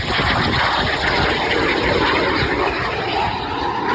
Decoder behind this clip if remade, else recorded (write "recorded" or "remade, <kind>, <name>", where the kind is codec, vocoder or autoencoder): recorded